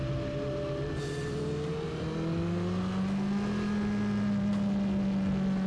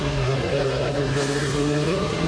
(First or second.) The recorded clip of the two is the first